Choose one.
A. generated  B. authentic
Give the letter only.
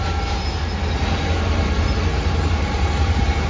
B